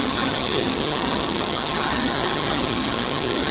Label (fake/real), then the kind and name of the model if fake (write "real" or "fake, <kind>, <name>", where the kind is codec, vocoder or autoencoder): fake, vocoder, HiFi-GAN